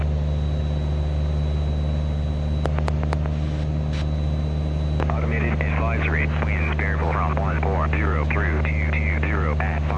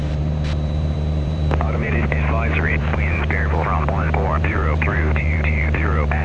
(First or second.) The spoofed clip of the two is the second